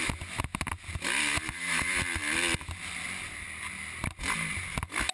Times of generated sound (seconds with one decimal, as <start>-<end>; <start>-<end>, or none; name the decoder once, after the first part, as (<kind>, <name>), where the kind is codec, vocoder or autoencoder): none